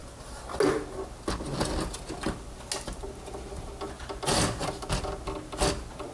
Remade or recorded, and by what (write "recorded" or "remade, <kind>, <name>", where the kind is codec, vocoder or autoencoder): recorded